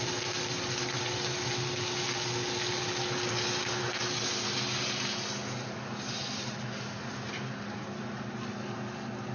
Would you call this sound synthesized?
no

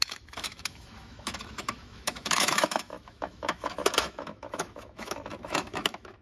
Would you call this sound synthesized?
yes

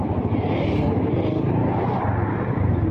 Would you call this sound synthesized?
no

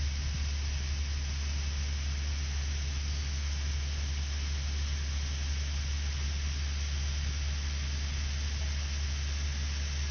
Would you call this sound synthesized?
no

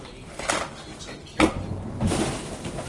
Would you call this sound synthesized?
no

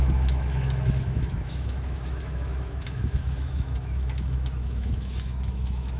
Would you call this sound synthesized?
yes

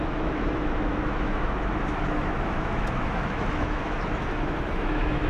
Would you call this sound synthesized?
yes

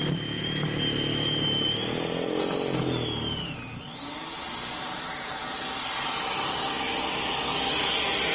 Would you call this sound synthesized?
no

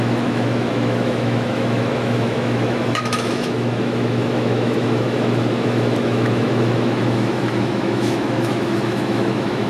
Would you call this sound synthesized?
yes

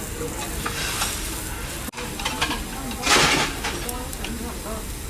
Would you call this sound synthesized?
no